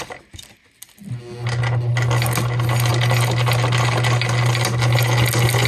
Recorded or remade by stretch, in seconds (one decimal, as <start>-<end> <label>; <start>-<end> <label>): 0.0-5.7 recorded